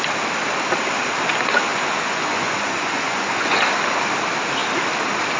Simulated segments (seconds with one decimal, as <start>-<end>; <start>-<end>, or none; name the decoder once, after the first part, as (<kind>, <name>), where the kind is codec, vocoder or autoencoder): 1.7-3.6 (vocoder, Vocos)